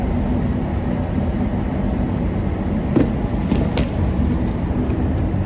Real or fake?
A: fake